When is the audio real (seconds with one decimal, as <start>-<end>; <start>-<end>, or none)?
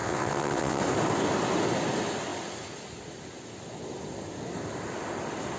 0.8-5.6